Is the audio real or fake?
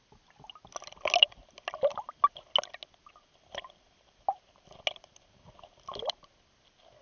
real